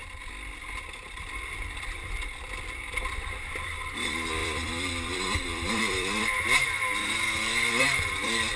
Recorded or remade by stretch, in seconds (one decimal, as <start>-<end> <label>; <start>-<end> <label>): 0.0-0.6 recorded; 0.6-8.6 remade